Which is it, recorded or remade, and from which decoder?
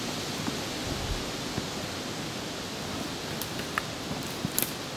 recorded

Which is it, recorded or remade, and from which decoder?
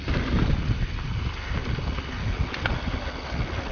recorded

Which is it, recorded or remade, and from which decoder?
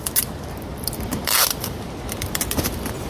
recorded